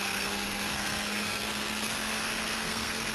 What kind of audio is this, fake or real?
fake